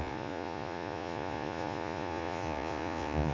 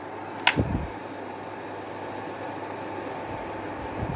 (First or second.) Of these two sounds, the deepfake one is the first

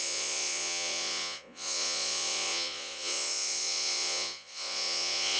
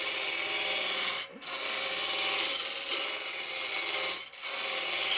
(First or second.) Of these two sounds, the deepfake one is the first